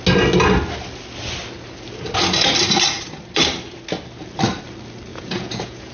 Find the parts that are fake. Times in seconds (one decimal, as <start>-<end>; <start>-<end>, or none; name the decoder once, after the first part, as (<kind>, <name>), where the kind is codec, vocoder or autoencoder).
5.1-5.9 (vocoder, Vocos)